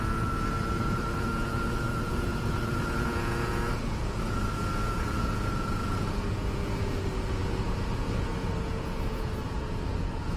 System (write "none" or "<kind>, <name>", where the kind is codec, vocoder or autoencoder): vocoder, Vocos